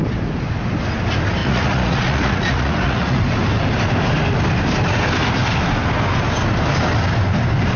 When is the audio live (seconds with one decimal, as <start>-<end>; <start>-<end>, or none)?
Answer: 0.0-1.4; 3.2-7.8

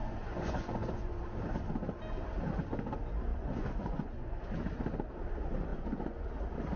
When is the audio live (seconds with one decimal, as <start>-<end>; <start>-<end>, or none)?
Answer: 1.2-3.3; 4.5-5.7; 6.3-6.8

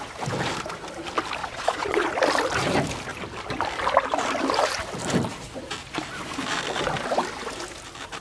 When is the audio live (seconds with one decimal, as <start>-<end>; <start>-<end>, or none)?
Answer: 0.0-1.4; 2.1-8.2

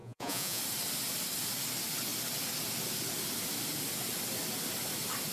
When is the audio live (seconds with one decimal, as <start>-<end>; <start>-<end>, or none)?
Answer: 0.6-5.3

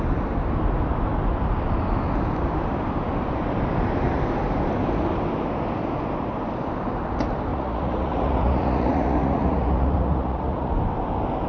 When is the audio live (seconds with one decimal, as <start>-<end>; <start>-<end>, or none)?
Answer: 0.0-7.5; 10.7-11.5

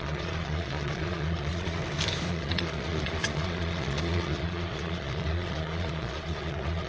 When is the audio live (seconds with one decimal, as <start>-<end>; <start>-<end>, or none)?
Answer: 1.8-2.3

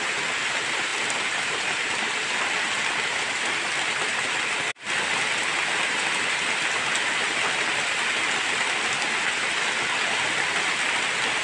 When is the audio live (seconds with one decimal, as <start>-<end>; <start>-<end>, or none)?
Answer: 0.0-11.4